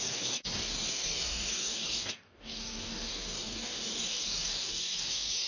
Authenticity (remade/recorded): remade